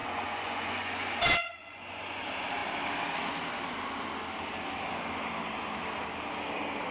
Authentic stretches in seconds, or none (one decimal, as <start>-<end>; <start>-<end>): 1.1-1.6; 2.2-6.9